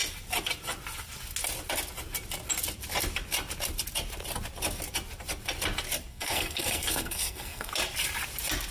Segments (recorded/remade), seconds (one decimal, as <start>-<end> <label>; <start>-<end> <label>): 0.0-6.1 recorded; 6.1-7.7 remade; 7.7-8.7 recorded